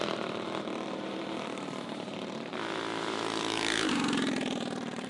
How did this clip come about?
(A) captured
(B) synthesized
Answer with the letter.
B